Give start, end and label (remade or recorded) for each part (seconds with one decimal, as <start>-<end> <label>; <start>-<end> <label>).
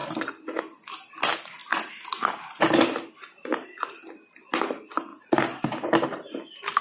0.0-6.8 recorded